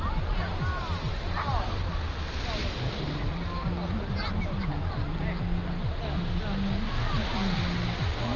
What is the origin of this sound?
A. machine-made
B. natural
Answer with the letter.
B